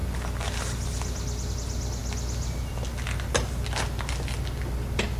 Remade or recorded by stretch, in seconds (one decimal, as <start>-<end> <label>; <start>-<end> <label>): 0.0-5.2 recorded